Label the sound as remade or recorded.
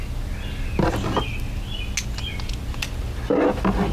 recorded